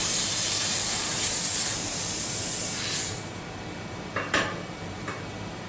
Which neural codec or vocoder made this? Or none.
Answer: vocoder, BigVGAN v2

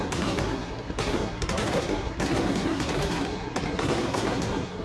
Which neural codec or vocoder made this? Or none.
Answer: codec, SNAC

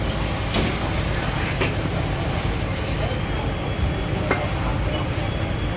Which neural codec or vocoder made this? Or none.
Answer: none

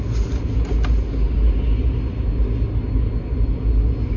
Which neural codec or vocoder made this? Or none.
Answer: none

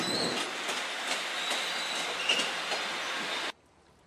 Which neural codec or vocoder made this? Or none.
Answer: none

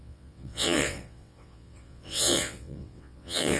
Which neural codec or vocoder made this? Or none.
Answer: vocoder, WaveNeXt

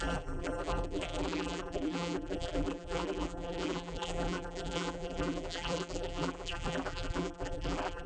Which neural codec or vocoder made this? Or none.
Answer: vocoder, BigVGAN v2